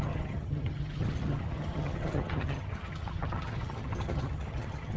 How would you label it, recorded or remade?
remade